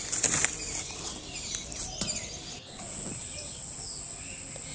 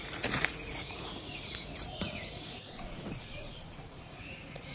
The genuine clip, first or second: first